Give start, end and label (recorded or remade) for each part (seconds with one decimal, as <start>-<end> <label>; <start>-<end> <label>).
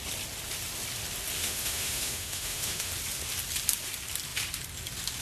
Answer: 0.0-1.4 recorded; 1.4-2.9 remade; 2.9-5.2 recorded